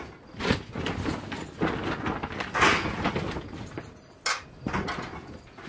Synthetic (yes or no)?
no